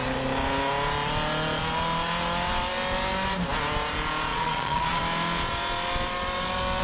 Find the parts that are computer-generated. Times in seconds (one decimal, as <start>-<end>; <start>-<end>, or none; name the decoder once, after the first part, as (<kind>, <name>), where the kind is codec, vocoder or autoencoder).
4.3-5.0 (vocoder, Vocos)

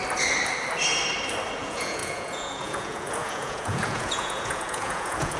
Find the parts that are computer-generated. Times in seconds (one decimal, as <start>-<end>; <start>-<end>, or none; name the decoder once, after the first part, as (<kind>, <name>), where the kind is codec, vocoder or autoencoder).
1.6-5.4 (vocoder, Vocos)

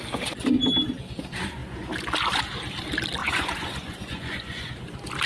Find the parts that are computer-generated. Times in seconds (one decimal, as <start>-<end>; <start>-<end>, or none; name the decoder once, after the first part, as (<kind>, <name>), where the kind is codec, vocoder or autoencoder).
3.2-4.7 (vocoder, Vocos)

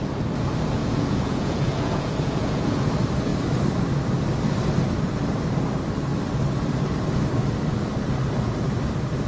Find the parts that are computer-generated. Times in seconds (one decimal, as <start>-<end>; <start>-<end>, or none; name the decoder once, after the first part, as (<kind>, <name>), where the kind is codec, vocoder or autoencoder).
0.8-2.9 (vocoder, Vocos)

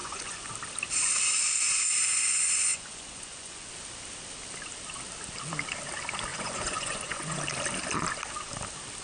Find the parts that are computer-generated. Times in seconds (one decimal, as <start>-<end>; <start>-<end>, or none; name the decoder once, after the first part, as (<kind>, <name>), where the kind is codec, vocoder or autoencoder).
0.0-0.5 (vocoder, Vocos); 2.7-3.7; 6.3-7.4

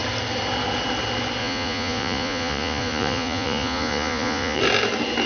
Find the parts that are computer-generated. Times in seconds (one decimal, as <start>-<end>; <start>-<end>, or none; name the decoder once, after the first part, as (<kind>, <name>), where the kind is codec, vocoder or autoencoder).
1.4-4.6 (vocoder, Vocos)